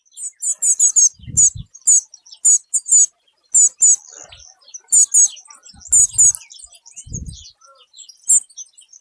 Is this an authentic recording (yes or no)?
yes